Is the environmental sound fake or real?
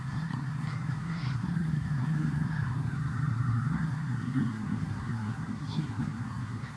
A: fake